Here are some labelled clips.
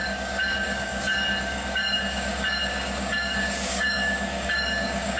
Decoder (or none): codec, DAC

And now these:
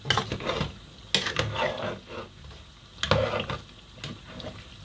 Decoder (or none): none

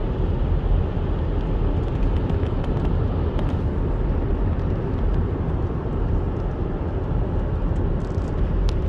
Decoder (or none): none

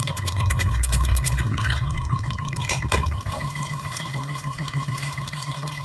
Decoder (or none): codec, SNAC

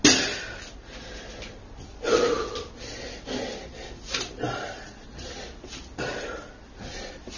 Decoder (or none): none